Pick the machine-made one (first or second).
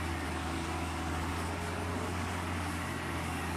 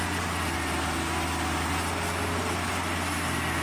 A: first